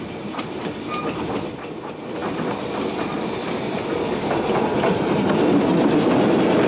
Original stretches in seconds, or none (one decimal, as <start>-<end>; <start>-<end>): 0.0-6.7